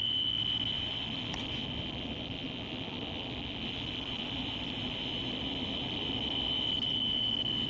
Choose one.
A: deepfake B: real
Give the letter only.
B